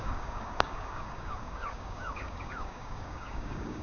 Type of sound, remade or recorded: remade